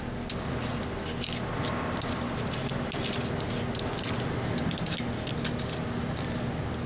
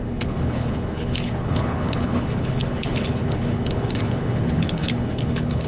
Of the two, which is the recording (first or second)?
first